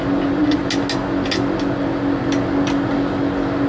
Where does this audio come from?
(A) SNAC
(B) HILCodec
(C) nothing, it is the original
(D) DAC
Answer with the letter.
C